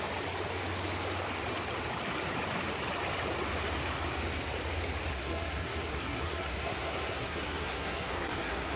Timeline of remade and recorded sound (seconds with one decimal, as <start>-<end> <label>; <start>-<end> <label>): 0.0-5.1 recorded; 5.1-8.8 remade